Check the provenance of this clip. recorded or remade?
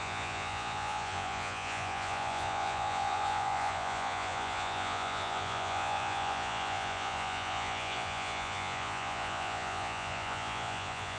remade